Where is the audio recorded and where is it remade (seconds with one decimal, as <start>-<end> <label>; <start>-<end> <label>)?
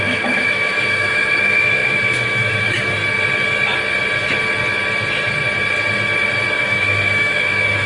0.0-3.0 remade; 3.0-6.5 recorded; 6.5-7.9 remade